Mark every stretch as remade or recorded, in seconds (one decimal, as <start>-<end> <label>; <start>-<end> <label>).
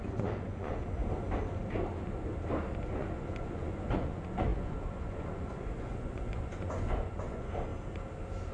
0.0-1.0 remade; 1.0-2.9 recorded; 2.9-7.7 remade; 7.7-8.5 recorded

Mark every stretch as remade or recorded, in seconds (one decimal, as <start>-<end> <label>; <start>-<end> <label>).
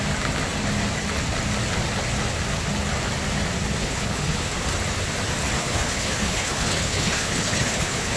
0.0-3.8 recorded; 3.8-4.5 remade; 4.5-5.6 recorded; 5.6-8.2 remade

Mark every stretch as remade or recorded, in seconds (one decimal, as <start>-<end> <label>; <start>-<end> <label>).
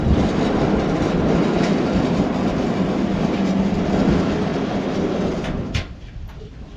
0.0-6.8 recorded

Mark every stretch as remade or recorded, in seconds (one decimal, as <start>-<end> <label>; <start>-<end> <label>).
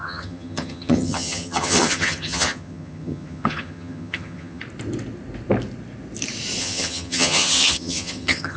0.0-4.6 remade; 4.6-6.6 recorded; 6.6-8.6 remade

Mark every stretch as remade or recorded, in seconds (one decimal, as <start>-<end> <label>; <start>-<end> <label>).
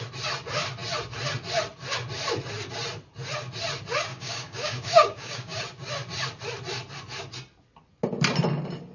0.0-4.1 recorded; 4.1-5.6 remade; 5.6-8.9 recorded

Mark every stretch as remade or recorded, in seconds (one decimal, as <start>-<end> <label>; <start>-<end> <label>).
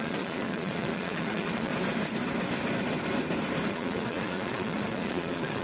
0.0-1.7 remade; 1.7-3.7 recorded; 3.7-5.6 remade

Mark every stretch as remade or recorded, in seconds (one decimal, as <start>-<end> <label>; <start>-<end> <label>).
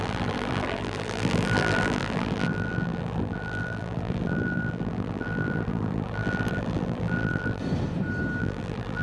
0.0-7.6 remade; 7.6-8.4 recorded; 8.4-9.0 remade